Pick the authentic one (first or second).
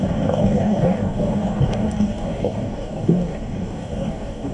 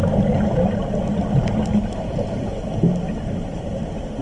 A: second